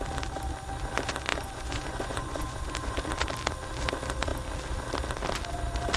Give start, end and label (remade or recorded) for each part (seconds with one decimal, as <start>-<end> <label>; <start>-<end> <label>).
0.0-1.3 recorded; 1.3-3.0 remade; 3.0-6.0 recorded